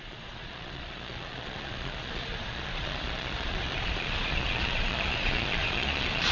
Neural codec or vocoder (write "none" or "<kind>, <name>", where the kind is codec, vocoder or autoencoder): vocoder, Vocos